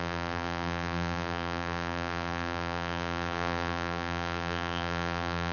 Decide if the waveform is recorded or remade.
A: remade